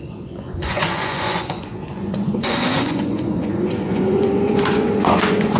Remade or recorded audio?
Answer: remade